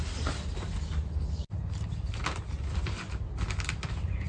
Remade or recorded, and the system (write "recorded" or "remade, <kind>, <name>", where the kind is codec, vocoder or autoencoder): recorded